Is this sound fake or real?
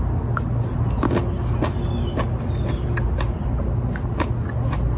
real